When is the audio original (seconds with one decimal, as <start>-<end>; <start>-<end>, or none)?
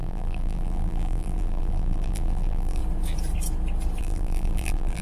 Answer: 2.8-4.0